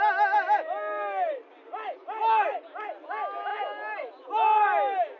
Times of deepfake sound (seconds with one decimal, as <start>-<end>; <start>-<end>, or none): none